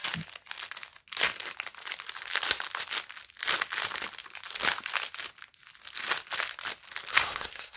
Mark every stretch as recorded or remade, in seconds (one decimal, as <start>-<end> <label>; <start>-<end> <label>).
0.0-7.1 recorded; 7.1-7.8 remade